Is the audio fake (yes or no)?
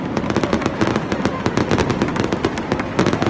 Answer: no